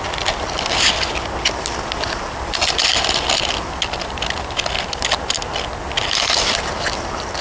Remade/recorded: recorded